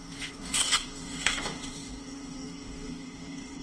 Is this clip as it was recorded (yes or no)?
no